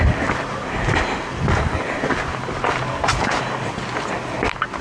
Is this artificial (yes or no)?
no